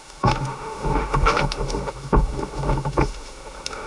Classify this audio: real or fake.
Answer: fake